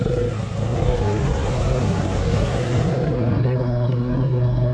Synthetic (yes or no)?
yes